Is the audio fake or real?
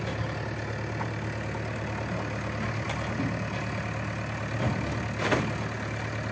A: real